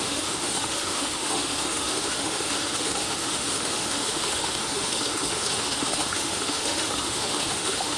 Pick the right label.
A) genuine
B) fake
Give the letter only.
B